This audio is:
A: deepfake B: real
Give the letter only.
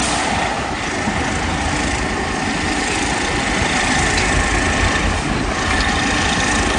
A